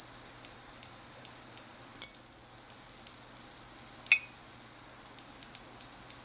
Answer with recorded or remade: recorded